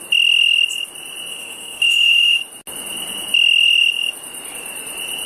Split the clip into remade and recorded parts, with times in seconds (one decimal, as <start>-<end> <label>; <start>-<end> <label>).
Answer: 0.0-1.3 recorded; 1.3-2.4 remade; 2.4-5.3 recorded